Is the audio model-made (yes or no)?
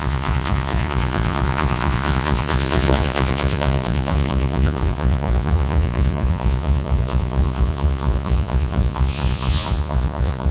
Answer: yes